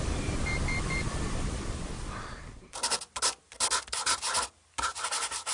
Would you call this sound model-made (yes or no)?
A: no